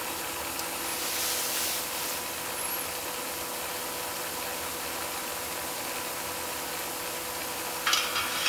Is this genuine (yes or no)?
yes